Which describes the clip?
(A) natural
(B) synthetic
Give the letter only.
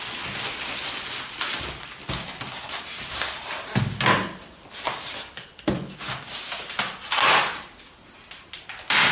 A